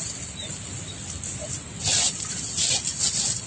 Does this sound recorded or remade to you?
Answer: recorded